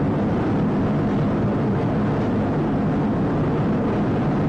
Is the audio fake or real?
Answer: real